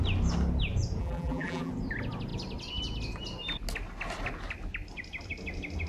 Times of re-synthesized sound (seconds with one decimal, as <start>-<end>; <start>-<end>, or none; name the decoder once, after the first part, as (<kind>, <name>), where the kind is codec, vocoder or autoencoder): 1.0-1.7 (vocoder, BigVGAN v2)